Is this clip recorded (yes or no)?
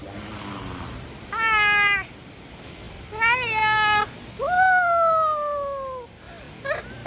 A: yes